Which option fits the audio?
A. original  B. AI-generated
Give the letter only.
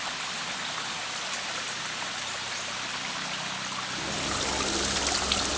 A